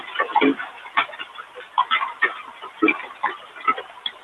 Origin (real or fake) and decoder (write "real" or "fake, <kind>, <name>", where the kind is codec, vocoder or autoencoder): real